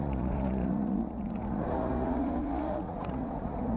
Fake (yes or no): yes